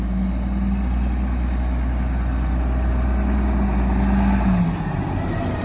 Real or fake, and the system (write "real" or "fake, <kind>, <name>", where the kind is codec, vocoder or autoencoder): real